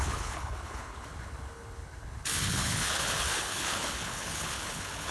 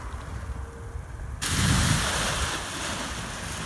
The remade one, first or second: first